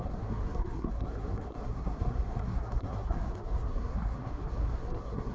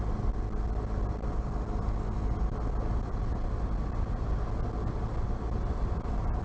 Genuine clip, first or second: second